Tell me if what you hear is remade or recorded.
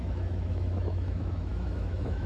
remade